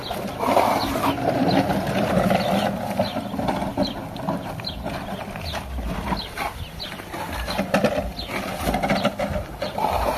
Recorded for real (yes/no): yes